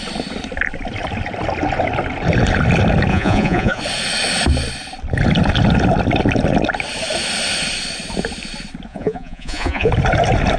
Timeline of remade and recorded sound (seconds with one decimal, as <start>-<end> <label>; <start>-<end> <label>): 0.0-3.1 recorded; 3.1-3.8 remade; 3.8-8.9 recorded; 8.9-9.9 remade; 9.9-10.6 recorded